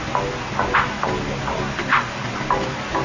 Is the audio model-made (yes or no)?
no